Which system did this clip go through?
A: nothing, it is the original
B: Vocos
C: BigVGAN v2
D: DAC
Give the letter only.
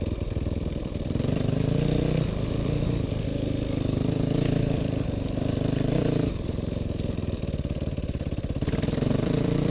C